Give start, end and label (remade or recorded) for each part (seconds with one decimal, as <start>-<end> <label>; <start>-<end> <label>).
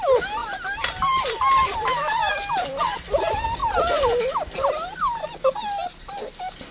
0.0-6.7 recorded